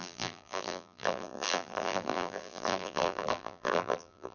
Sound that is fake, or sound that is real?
fake